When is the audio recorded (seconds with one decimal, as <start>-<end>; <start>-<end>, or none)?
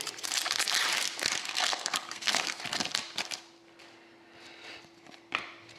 0.0-1.4; 2.6-5.8